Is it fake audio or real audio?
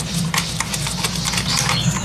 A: real